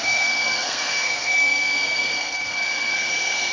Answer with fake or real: fake